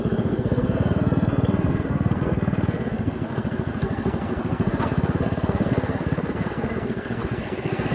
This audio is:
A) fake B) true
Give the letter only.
A